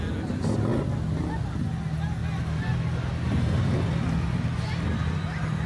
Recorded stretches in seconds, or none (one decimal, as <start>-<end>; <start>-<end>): 0.0-5.7